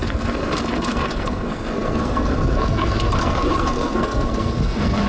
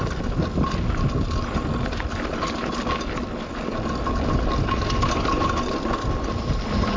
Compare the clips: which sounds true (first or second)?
second